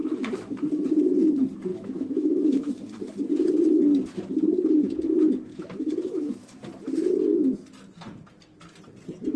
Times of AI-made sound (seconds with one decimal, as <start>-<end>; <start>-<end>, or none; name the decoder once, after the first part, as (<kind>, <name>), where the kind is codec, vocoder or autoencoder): 0.0-0.5 (autoencoder, DAC-VAE); 1.7-3.1; 5.5-6.6